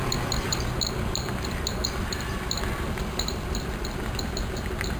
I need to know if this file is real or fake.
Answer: fake